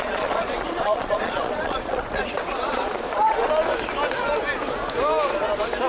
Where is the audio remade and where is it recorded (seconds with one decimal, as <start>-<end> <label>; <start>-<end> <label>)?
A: 0.0-3.5 remade; 3.5-5.9 recorded